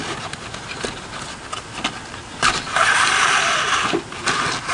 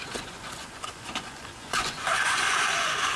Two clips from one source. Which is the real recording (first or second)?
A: first